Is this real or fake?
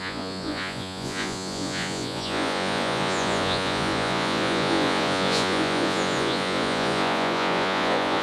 fake